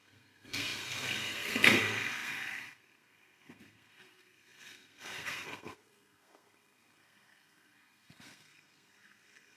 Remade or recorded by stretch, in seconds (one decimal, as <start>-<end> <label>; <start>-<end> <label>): 0.0-9.6 remade